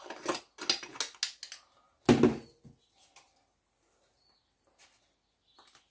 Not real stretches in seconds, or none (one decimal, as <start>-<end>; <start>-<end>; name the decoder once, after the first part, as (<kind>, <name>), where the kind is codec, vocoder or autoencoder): none